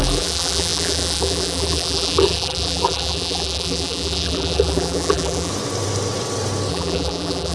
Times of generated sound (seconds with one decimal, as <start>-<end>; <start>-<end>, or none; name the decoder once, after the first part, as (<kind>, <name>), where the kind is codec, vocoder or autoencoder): 0.0-5.5 (vocoder, BigVGAN v2); 6.7-7.5